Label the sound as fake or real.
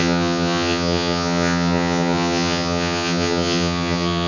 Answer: fake